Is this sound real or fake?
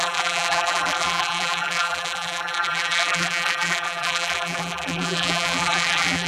fake